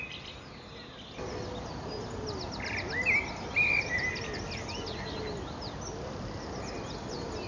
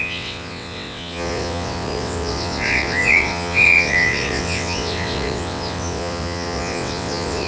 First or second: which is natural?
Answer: first